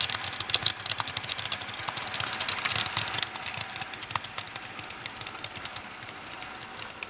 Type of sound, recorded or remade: recorded